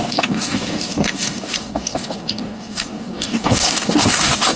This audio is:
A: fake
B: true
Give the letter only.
A